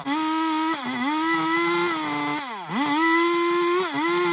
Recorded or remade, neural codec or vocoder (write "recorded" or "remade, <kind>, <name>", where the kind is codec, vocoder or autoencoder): recorded